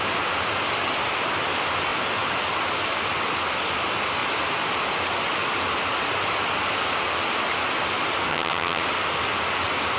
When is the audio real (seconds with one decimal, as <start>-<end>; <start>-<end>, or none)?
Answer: 0.0-8.3; 8.8-10.0

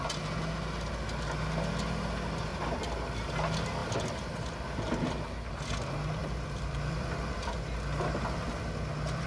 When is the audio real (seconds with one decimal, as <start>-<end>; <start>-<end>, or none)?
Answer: 0.0-2.5; 3.1-3.8; 5.4-6.2; 7.6-9.3

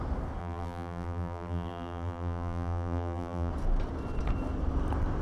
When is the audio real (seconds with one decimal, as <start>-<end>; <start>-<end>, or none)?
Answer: 0.0-0.4; 3.5-5.2

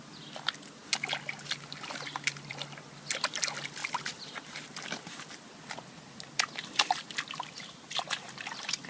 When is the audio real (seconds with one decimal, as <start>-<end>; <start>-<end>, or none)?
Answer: 0.0-8.9

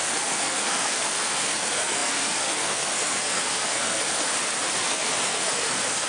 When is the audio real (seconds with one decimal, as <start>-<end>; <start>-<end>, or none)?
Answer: 4.3-4.8